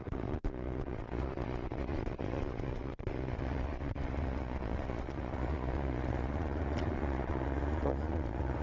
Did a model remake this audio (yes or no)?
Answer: yes